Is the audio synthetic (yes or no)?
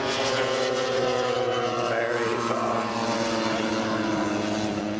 yes